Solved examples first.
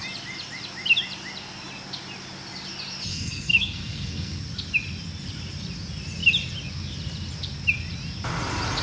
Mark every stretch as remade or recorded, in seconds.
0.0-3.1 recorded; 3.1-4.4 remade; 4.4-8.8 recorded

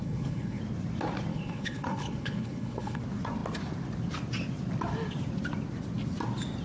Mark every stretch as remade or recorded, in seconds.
0.0-0.6 remade; 0.6-1.3 recorded; 1.3-3.0 remade; 3.0-6.6 recorded

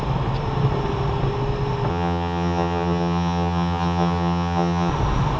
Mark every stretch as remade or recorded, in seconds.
0.0-1.9 recorded; 1.9-4.9 remade; 4.9-5.4 recorded

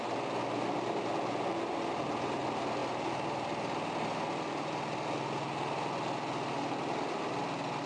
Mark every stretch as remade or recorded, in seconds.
0.0-7.9 recorded

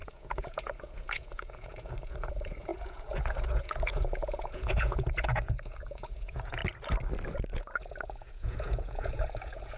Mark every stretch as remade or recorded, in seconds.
0.0-6.6 remade; 6.6-7.5 recorded; 7.5-9.8 remade

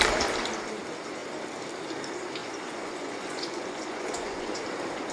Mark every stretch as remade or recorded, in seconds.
0.0-2.4 recorded; 2.4-4.6 remade; 4.6-5.1 recorded

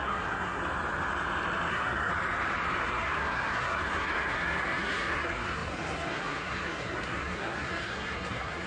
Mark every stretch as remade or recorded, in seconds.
0.0-0.6 remade; 0.6-1.7 recorded; 1.7-2.1 remade; 2.1-2.8 recorded; 2.8-8.7 remade